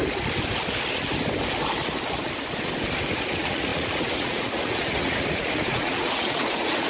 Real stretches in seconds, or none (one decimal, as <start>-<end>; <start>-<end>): 0.0-3.3